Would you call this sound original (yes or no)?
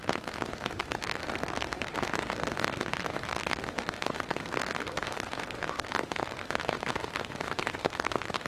no